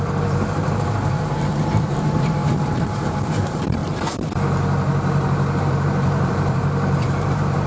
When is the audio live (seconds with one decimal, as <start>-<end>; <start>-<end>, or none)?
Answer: 3.8-5.6